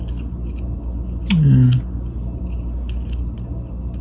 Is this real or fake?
real